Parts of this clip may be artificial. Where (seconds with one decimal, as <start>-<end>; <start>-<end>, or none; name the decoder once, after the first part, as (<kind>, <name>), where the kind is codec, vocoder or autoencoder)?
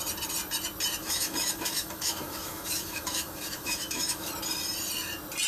1.0-4.3 (autoencoder, DAC-VAE)